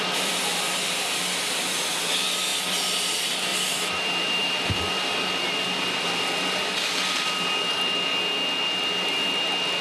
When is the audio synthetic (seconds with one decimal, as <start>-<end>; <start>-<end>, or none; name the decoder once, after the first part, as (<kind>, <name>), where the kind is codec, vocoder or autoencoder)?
0.0-0.5 (vocoder, BigVGAN v2); 1.4-2.5; 3.1-8.1